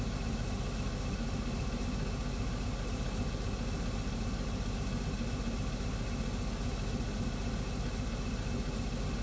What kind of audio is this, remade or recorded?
recorded